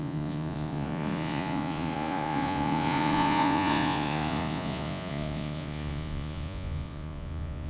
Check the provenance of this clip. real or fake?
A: fake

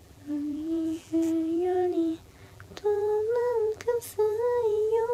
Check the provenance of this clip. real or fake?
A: fake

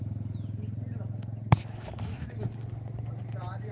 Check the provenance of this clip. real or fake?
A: real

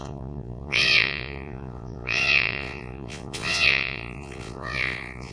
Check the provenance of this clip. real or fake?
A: fake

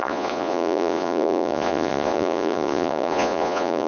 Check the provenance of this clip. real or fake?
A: fake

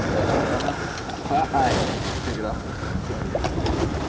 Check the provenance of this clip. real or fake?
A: real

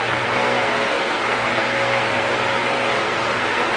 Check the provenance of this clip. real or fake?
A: fake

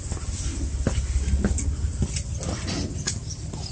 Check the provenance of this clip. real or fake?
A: real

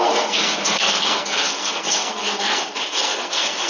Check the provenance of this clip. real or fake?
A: fake